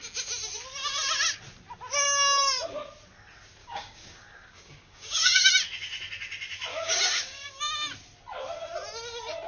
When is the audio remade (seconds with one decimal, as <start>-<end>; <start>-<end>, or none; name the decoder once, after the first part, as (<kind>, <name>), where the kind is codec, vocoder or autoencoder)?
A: 3.6-5.5 (codec, DAC); 6.7-7.6